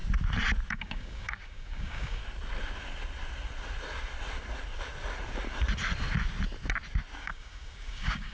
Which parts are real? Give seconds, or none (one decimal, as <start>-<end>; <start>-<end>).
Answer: 0.0-0.7; 2.2-7.2